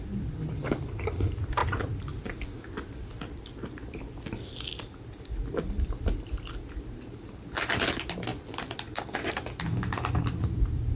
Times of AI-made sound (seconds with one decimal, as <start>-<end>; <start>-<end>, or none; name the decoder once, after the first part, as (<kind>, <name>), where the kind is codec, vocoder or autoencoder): none

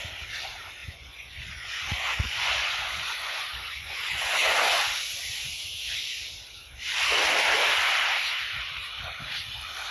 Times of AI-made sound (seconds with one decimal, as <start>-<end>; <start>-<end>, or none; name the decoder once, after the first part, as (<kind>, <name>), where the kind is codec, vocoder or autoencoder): 0.8-4.7 (vocoder, Vocos)

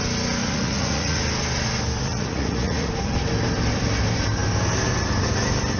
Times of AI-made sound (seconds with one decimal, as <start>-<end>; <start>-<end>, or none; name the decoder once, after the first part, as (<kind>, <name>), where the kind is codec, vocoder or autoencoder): 0.4-1.2 (vocoder, Vocos); 2.0-2.9

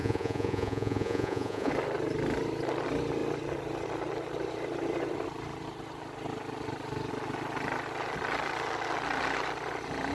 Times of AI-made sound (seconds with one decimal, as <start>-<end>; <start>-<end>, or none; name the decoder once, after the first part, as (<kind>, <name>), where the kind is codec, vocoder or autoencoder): 0.0-1.7 (vocoder, Vocos)

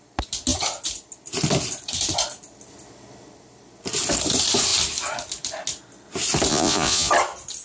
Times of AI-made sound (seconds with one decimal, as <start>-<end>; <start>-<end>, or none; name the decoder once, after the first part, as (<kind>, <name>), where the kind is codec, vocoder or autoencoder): 6.5-7.1 (vocoder, Vocos)

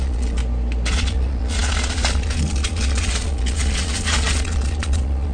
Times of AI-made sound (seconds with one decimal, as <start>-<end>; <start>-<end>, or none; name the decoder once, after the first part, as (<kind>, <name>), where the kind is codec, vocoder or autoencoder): 0.0-0.4 (vocoder, Vocos); 0.9-5.3

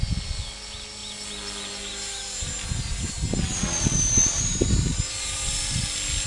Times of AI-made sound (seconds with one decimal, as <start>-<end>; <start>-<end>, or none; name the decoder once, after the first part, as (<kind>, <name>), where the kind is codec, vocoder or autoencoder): none

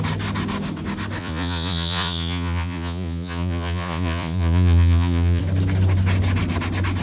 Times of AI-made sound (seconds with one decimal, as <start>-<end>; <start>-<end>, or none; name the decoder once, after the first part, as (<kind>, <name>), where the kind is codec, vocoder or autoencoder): 1.2-5.4 (vocoder, Vocos)